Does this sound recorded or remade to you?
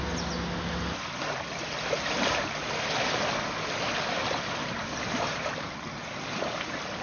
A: recorded